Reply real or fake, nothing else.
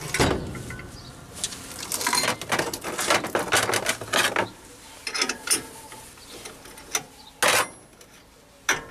real